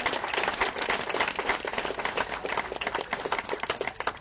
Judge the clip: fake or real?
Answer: real